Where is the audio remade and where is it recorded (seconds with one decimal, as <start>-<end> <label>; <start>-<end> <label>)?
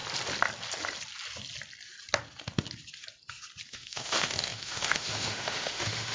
0.0-3.7 recorded; 3.7-6.1 remade